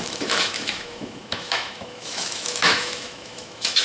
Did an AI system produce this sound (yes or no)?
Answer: yes